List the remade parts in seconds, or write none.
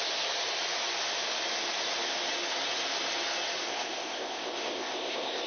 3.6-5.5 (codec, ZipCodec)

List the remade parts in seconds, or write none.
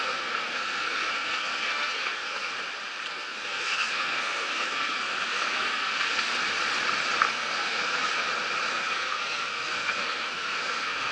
0.0-2.5 (codec, SNAC); 3.1-6.3; 7.3-8.1; 8.7-11.1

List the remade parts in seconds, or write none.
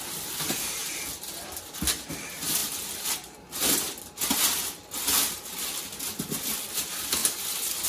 2.6-4.0 (vocoder, BigVGAN v2); 7.2-7.9